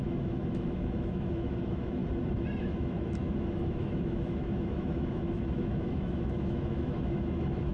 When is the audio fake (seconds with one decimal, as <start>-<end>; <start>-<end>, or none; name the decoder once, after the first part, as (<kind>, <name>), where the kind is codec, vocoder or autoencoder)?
0.0-2.0 (autoencoder, DAC-VAE); 2.6-7.7